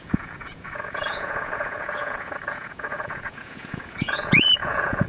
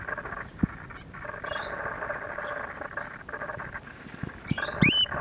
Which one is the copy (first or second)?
first